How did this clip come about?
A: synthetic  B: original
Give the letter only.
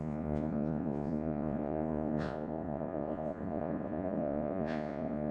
A